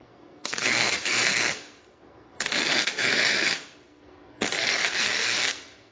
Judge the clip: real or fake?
fake